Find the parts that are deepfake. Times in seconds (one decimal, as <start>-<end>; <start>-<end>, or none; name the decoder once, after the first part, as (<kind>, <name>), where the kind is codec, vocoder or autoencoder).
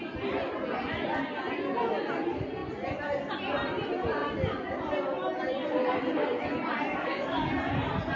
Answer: 6.9-7.5 (codec, DAC)